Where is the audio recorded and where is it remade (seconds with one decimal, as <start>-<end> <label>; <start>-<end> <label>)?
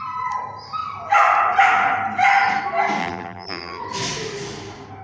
0.0-3.0 recorded; 3.0-3.8 remade; 3.8-5.0 recorded